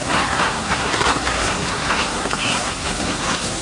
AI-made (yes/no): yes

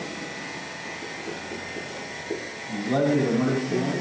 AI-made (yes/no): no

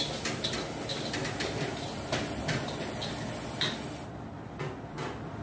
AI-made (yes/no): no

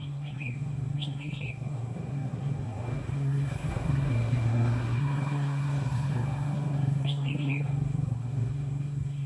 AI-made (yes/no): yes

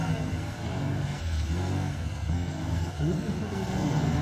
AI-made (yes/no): yes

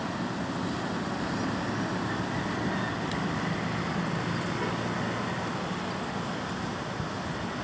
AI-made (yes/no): no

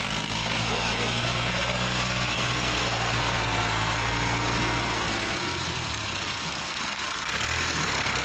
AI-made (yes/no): yes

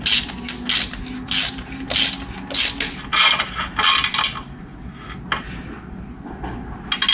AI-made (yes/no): no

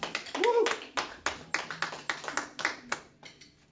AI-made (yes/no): no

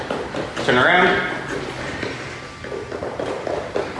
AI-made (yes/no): no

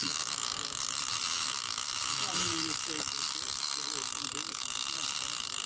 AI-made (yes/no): yes